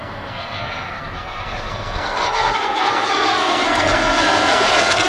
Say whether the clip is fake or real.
fake